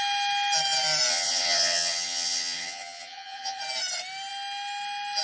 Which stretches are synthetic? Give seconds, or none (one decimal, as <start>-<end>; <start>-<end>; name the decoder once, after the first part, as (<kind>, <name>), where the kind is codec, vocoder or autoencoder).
1.1-3.6 (vocoder, HiFi-GAN)